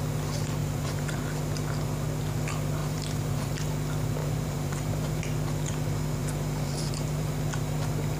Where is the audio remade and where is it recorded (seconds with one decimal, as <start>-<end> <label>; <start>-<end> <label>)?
0.0-0.6 recorded; 0.6-1.2 remade; 1.2-2.8 recorded; 2.8-3.5 remade; 3.5-4.2 recorded; 4.2-5.2 remade; 5.2-6.2 recorded; 6.2-7.3 remade; 7.3-8.2 recorded